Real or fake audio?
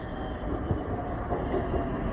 real